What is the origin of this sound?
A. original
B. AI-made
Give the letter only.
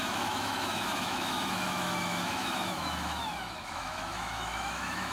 B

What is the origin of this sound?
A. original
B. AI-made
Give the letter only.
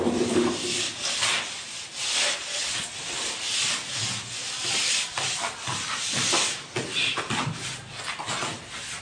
A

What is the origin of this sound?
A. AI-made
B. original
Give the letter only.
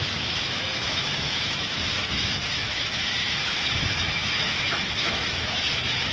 A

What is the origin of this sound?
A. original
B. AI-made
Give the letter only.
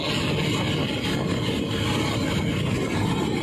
A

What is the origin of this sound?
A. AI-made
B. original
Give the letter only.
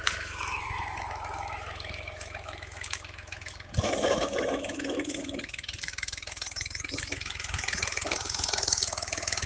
A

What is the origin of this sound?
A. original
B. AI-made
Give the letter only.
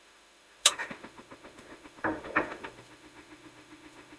B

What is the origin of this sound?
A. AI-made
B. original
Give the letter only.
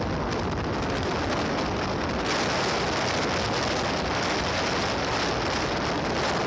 B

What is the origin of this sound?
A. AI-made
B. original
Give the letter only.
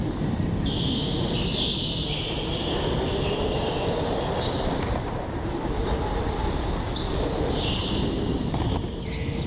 B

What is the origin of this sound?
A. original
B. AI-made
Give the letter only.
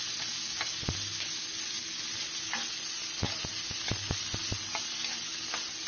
A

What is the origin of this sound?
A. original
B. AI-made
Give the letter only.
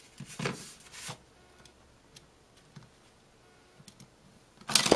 A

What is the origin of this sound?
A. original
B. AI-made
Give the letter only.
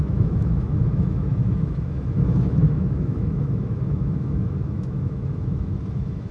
B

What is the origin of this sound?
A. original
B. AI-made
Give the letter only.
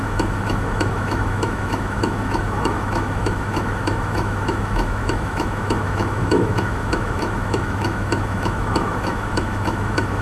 B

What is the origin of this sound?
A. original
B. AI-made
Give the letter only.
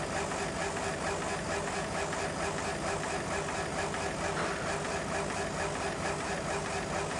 A